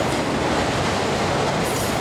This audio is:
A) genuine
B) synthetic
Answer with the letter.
A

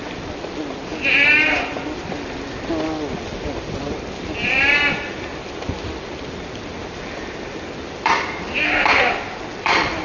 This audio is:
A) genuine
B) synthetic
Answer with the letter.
B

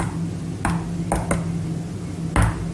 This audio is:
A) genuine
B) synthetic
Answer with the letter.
A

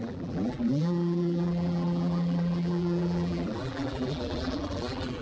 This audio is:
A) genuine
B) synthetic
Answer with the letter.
B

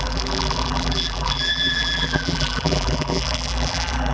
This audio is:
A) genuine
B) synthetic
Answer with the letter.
B